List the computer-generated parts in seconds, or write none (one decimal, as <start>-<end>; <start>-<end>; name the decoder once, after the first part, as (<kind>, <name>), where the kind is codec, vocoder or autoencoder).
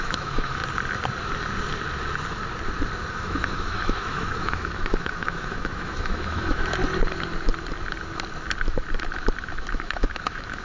0.0-0.6 (autoencoder, DAC-VAE); 3.1-6.8; 9.7-10.6